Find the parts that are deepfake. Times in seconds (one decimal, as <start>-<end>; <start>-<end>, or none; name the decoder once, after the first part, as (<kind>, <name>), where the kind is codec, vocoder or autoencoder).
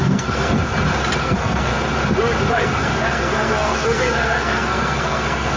0.0-0.6 (codec, SNAC); 1.2-1.7; 2.5-5.6